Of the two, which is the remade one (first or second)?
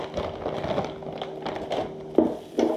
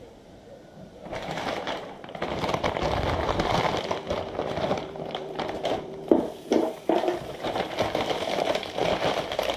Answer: second